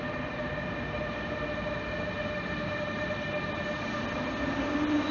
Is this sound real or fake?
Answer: real